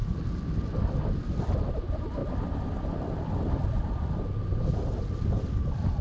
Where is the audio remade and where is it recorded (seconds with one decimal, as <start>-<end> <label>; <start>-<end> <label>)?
0.0-6.0 recorded